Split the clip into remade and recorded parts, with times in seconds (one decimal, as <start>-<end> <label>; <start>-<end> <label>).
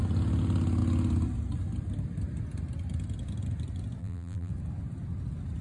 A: 0.0-4.0 recorded; 4.0-4.5 remade; 4.5-5.6 recorded